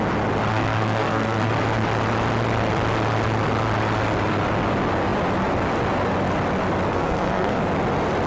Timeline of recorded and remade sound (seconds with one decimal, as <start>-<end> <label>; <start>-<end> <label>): 0.0-0.5 recorded; 0.5-1.5 remade; 1.5-6.9 recorded; 6.9-7.6 remade; 7.6-8.3 recorded